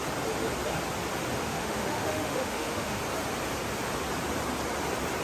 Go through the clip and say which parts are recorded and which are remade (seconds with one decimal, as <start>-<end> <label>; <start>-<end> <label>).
0.0-1.4 recorded; 1.4-3.0 remade; 3.0-5.2 recorded